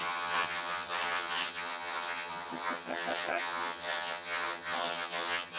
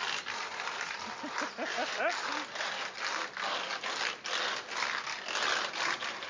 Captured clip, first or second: second